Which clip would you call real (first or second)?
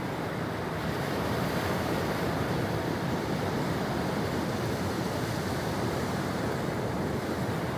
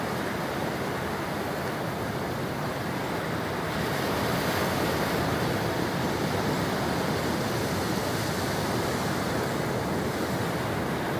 second